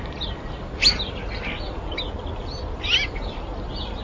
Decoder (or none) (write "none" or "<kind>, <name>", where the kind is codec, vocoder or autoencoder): none